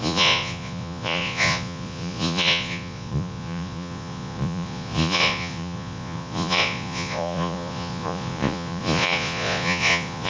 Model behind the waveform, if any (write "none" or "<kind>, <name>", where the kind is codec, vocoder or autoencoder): vocoder, Vocos